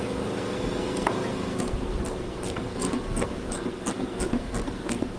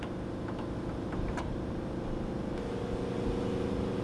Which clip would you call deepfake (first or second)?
first